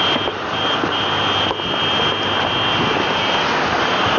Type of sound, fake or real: real